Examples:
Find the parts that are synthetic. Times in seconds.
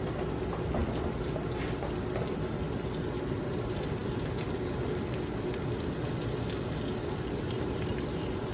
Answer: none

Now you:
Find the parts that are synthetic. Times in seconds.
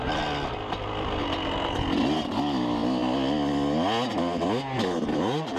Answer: none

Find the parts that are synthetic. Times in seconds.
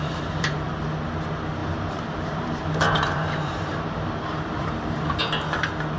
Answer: 0.0-0.7 (vocoder, BigVGAN v2); 1.6-5.2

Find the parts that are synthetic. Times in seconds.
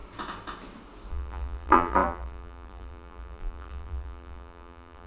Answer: 1.1-5.1 (vocoder, BigVGAN v2)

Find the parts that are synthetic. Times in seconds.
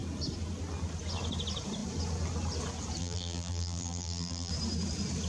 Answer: 3.0-4.5 (vocoder, BigVGAN v2)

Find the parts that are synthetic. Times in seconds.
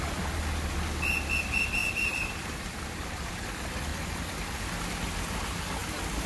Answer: 1.8-3.3 (vocoder, BigVGAN v2); 3.9-4.5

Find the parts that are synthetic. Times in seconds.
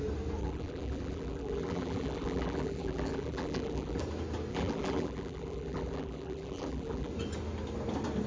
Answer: 0.4-4.0 (vocoder, BigVGAN v2); 4.5-7.1